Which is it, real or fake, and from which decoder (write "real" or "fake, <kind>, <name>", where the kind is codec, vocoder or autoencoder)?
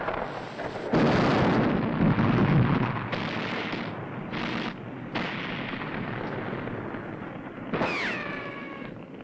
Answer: real